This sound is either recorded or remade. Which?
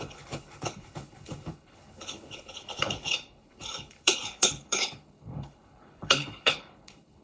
remade